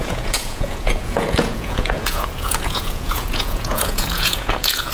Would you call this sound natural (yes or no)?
no